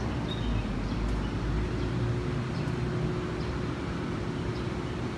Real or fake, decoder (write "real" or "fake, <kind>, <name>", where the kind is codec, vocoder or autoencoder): real